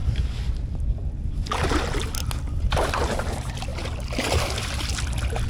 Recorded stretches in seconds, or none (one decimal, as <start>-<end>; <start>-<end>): 0.0-5.5